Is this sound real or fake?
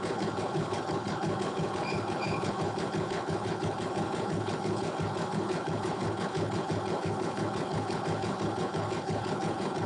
fake